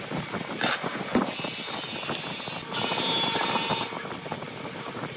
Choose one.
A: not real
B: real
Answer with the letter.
B